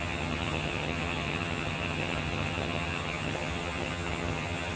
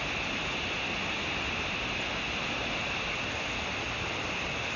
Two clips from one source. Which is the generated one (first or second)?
first